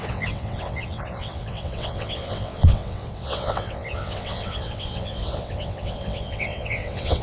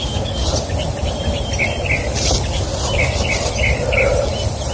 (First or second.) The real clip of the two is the second